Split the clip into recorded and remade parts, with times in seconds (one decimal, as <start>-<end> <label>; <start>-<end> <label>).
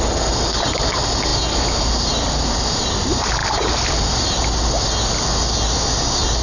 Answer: 0.0-6.4 recorded